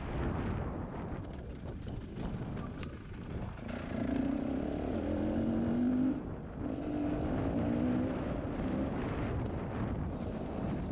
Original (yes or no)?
yes